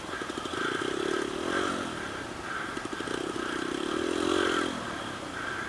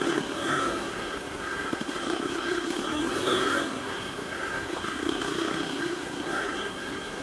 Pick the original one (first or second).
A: first